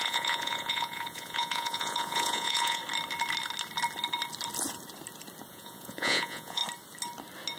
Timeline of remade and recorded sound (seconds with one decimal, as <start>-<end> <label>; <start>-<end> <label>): 0.0-2.8 remade; 2.8-5.5 recorded; 5.5-6.6 remade; 6.6-7.6 recorded